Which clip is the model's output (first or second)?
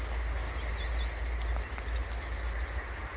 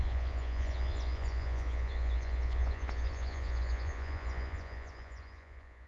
second